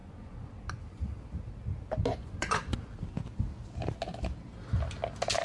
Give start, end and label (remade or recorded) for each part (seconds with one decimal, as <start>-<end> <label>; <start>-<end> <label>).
0.0-0.5 remade; 0.5-2.1 recorded; 2.1-2.8 remade; 2.8-5.4 recorded